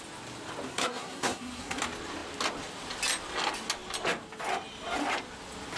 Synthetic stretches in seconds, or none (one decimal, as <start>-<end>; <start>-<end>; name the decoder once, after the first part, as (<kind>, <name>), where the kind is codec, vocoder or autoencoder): 0.7-1.8 (codec, SNAC)